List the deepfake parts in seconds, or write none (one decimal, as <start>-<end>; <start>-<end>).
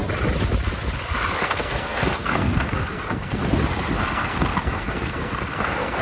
1.3-3.4; 4.0-6.0